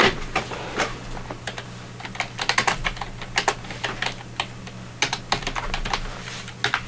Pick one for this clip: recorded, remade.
recorded